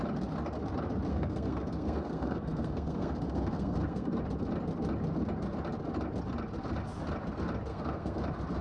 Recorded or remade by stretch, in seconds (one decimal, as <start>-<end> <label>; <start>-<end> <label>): 0.0-1.1 recorded; 1.1-4.2 remade; 4.2-7.7 recorded; 7.7-8.2 remade; 8.2-8.6 recorded